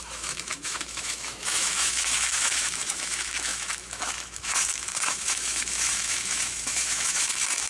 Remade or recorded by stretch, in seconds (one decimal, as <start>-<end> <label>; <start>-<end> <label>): 0.0-7.7 remade